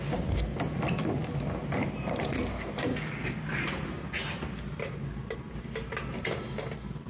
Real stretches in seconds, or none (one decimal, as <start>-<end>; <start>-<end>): 0.0-7.1